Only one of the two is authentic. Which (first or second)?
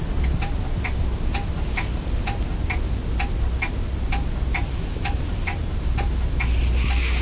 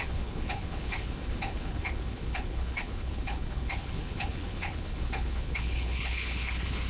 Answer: first